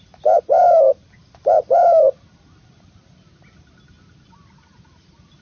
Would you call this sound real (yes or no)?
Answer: yes